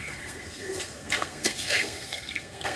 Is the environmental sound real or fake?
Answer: fake